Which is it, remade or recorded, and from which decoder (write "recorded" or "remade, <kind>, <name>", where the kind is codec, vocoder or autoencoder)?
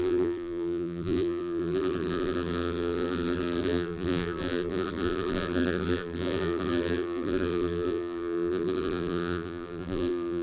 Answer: remade, vocoder, BigVGAN v2